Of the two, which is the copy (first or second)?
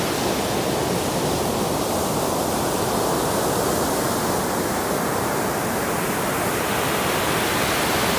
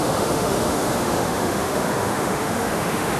second